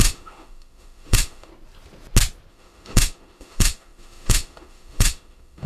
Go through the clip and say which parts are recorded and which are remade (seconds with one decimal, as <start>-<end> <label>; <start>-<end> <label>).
0.0-1.5 remade; 1.5-2.5 recorded; 2.5-5.7 remade